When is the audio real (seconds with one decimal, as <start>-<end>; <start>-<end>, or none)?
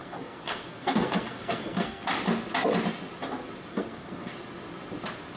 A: 2.1-3.7; 4.3-5.4